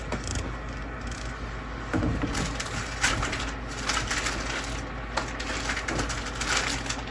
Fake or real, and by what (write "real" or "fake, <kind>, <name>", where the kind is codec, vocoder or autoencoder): real